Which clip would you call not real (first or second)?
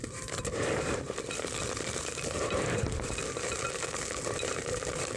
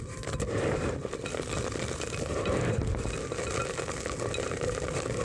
first